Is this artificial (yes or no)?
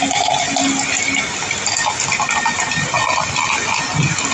no